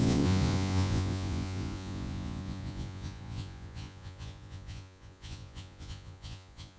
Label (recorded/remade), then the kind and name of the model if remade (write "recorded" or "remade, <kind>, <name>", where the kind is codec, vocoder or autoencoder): remade, vocoder, Vocos